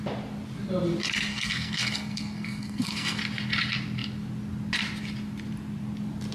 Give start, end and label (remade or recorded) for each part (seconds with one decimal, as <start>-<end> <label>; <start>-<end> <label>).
0.0-1.3 recorded; 1.3-3.2 remade; 3.2-6.3 recorded